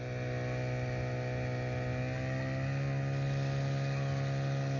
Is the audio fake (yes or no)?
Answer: no